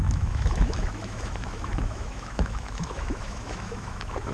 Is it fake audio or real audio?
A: fake